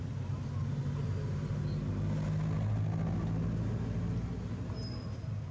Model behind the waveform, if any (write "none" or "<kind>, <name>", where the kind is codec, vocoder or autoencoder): none